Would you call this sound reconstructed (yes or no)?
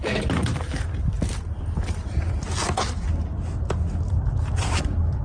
no